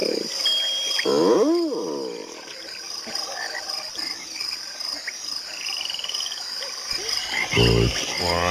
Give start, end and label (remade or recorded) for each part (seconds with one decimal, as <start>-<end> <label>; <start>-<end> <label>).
0.0-8.5 recorded